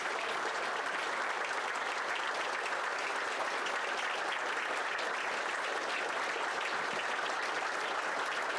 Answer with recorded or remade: recorded